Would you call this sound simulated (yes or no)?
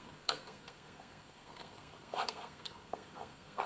yes